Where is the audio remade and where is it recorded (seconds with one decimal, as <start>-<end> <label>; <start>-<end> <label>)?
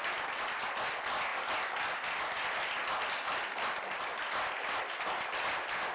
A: 0.0-5.9 recorded